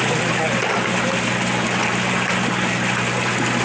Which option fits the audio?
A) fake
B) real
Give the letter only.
B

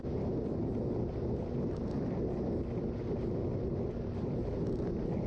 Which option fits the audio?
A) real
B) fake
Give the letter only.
A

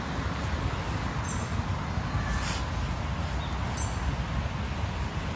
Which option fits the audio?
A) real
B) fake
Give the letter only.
A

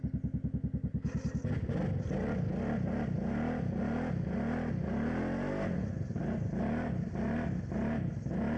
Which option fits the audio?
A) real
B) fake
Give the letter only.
A